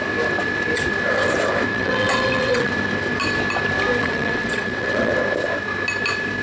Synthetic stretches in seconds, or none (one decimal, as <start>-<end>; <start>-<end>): 1.7-2.7; 4.0-5.1